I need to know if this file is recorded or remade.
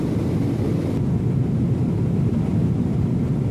remade